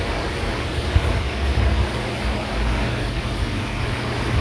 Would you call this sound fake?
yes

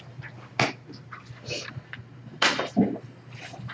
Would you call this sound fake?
no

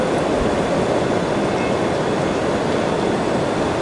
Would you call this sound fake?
no